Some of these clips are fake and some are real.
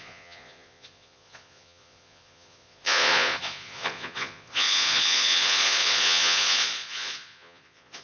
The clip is fake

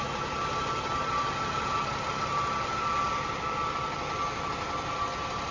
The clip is real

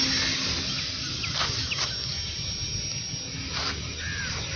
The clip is real